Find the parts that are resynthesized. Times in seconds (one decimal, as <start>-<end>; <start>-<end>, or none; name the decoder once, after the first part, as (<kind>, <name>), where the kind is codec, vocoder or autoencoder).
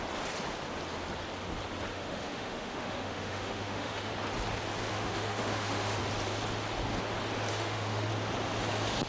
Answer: 1.9-4.1 (autoencoder, DAC-VAE); 4.9-6.0; 7.5-8.1